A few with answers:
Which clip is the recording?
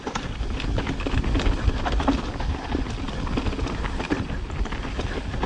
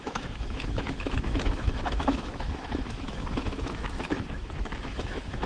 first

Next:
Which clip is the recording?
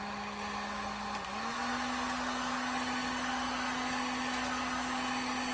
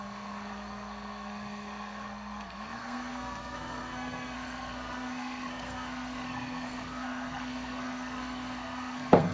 first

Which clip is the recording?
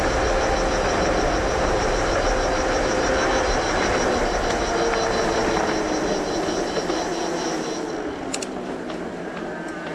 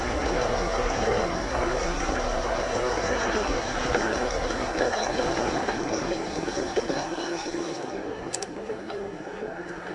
first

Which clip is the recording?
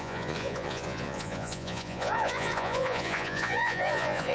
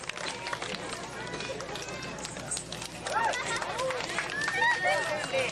second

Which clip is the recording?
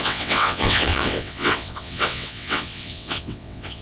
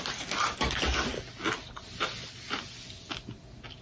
second